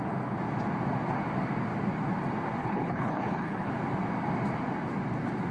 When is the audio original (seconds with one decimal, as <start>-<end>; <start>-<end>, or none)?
0.0-2.6; 3.7-5.5